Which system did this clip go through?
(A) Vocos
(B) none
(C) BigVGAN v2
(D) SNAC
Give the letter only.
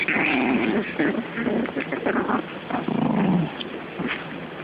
B